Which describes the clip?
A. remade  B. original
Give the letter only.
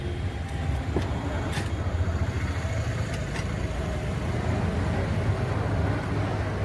B